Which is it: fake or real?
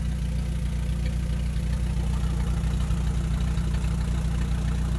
real